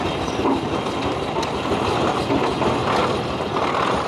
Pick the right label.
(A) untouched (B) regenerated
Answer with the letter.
A